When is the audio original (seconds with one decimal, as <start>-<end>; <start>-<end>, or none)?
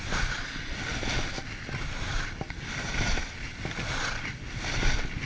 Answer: 0.0-5.3